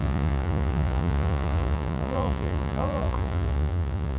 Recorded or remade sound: remade